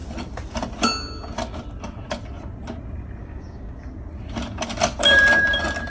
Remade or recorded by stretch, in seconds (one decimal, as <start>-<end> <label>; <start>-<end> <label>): 0.0-3.2 recorded; 3.2-3.8 remade; 3.8-5.9 recorded